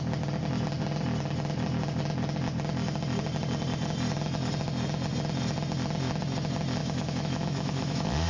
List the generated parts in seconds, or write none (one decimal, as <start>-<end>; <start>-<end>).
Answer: 6.8-8.3